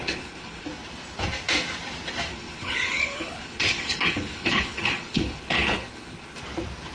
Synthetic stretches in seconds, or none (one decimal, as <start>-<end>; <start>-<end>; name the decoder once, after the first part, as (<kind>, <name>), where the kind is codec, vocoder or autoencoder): 0.0-0.7 (codec, HILCodec); 2.3-6.4